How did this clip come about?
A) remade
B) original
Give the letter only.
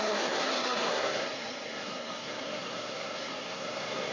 A